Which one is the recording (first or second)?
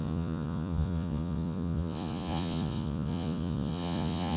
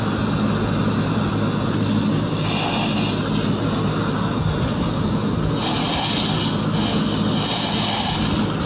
second